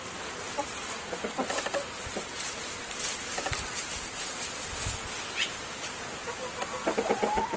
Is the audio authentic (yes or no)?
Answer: yes